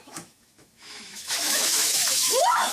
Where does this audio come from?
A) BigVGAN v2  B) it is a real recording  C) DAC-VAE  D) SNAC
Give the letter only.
C